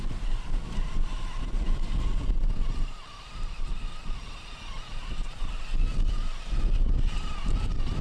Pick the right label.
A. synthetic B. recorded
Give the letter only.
B